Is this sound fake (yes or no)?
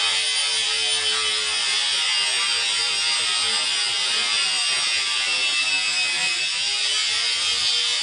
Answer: no